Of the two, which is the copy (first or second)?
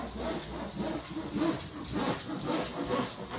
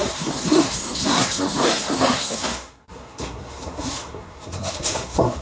second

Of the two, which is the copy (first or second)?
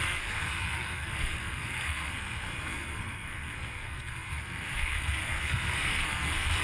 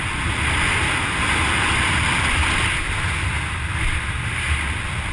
first